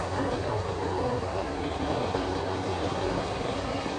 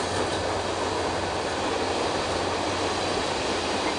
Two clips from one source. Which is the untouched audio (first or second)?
second